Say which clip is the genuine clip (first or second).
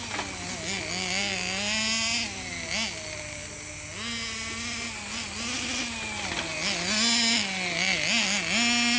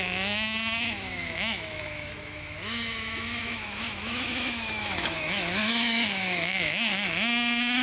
first